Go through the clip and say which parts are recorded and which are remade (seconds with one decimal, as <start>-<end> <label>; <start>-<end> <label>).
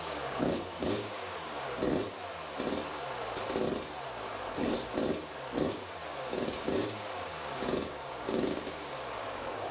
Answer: 0.0-1.8 remade; 1.8-5.7 recorded; 5.7-9.7 remade